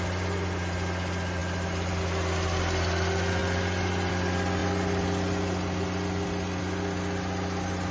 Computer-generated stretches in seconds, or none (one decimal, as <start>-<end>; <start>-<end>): none